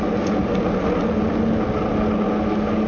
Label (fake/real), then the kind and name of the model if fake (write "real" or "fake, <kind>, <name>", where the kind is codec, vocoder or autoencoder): real